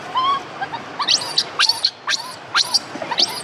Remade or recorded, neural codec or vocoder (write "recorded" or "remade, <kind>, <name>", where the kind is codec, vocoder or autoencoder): recorded